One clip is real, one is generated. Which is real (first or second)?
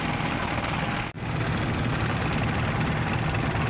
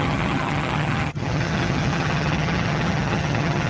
first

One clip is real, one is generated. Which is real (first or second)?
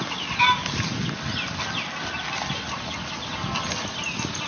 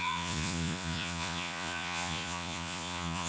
first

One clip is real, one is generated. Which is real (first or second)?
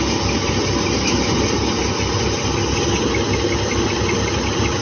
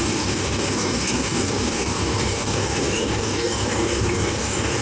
first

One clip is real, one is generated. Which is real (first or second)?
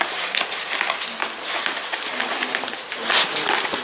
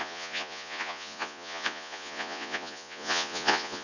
first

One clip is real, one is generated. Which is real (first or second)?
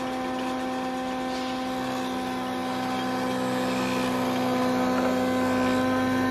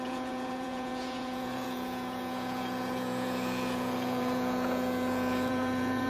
first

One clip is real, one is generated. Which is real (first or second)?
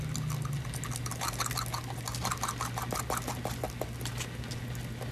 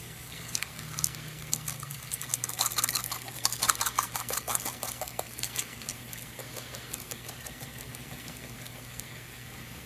first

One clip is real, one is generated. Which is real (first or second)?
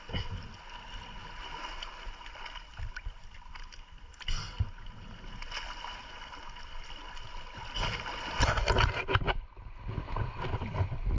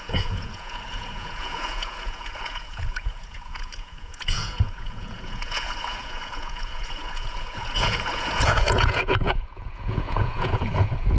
first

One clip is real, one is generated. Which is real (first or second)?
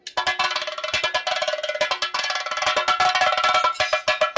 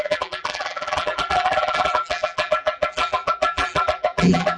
first